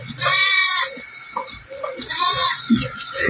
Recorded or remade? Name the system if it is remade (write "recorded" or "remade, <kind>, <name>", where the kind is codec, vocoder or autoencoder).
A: remade, vocoder, Vocos